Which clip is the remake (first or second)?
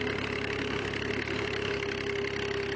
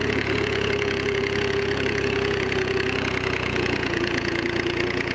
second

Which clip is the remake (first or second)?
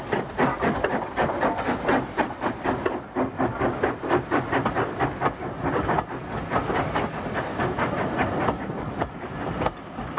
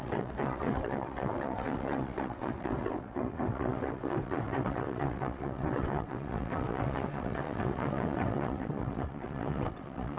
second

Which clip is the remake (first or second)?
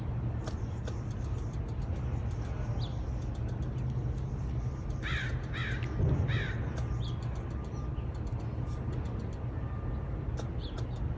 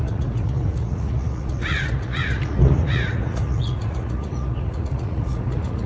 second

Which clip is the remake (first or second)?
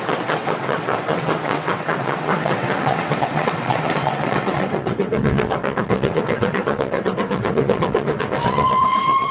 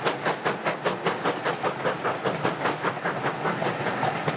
first